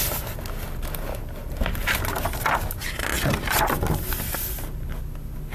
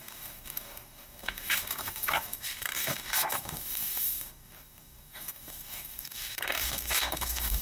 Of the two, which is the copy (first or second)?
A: second